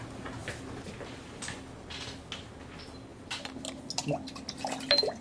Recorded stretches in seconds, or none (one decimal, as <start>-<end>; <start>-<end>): 0.0-5.2